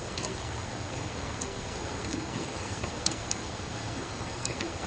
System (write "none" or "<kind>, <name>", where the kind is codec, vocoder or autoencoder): codec, SNAC